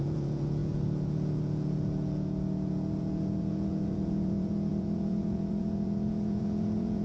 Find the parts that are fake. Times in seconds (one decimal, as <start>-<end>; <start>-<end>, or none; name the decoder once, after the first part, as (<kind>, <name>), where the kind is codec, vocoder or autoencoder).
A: 0.0-7.0 (vocoder, Vocos)